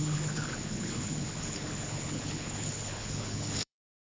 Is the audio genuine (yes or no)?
no